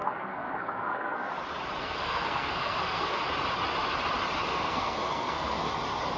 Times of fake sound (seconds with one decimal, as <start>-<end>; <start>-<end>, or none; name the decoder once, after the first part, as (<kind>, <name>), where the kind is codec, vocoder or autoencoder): 0.0-1.3 (codec, SNAC); 1.8-3.2; 4.5-5.7